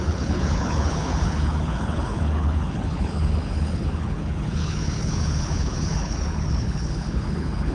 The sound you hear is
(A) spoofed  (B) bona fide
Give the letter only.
A